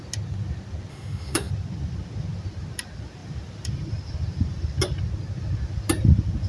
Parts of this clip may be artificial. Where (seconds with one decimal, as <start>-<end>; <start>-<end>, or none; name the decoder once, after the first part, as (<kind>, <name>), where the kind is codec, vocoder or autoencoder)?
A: 0.9-1.5 (autoencoder, DAC-VAE)